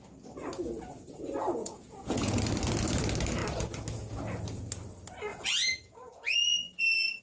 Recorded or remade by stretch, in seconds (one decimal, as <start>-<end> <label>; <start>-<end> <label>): 0.0-1.6 recorded; 1.6-2.4 remade; 2.4-5.3 recorded; 5.3-7.2 remade

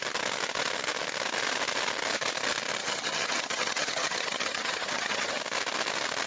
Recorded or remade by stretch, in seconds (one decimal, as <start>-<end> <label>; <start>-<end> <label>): 0.0-2.8 recorded; 2.8-5.4 remade; 5.4-6.3 recorded